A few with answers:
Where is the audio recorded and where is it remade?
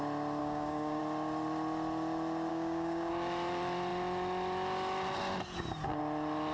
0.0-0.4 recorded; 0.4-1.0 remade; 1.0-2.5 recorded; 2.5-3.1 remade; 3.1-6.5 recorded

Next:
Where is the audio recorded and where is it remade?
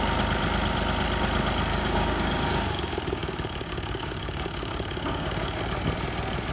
0.0-1.7 recorded; 1.7-5.6 remade; 5.6-6.5 recorded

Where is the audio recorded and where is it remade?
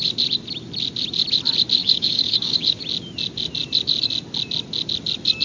0.0-1.8 recorded; 1.8-2.8 remade; 2.8-5.4 recorded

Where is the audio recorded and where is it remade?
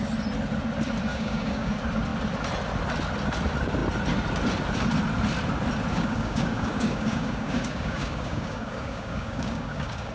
0.0-1.1 recorded; 1.1-1.7 remade; 1.7-5.9 recorded; 5.9-10.1 remade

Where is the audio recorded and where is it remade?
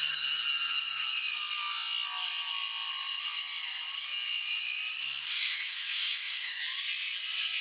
0.0-5.2 recorded; 5.2-6.6 remade; 6.6-7.6 recorded